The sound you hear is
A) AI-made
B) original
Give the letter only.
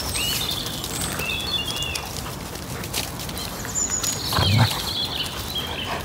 B